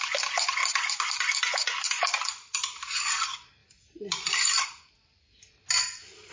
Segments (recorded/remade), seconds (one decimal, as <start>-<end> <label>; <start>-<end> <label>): 0.0-6.3 recorded